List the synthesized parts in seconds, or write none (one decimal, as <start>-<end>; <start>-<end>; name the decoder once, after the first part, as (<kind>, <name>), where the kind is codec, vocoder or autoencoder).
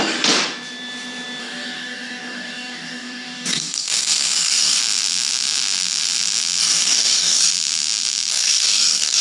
1.4-4.8 (codec, DAC); 6.6-7.5; 8.3-9.2